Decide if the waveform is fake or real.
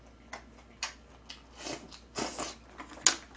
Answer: real